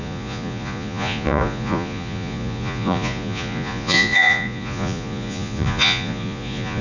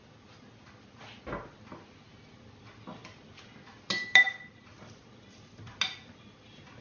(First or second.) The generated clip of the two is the first